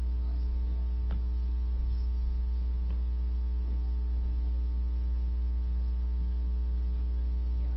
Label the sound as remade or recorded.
recorded